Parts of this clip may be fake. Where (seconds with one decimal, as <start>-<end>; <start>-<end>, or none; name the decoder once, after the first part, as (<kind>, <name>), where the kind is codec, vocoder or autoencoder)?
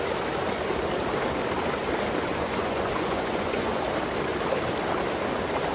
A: 2.3-3.8 (vocoder, Vocos)